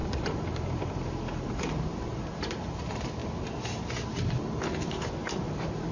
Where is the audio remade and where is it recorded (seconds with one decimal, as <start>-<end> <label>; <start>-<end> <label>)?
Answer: 0.0-3.2 remade; 3.2-5.5 recorded; 5.5-5.9 remade